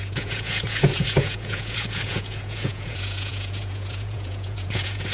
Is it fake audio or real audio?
fake